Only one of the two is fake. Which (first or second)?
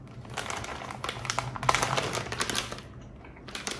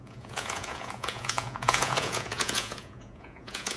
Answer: second